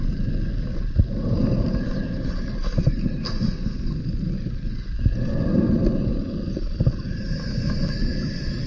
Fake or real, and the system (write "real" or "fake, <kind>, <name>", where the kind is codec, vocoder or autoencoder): real